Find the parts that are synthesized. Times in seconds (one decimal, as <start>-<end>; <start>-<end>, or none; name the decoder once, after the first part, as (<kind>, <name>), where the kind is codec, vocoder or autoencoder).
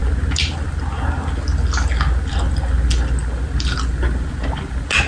none